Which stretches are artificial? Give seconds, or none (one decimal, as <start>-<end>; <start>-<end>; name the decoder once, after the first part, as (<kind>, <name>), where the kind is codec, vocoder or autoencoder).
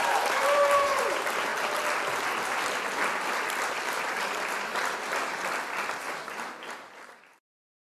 0.0-1.5 (vocoder, BigVGAN v2); 3.8-4.7; 6.1-7.9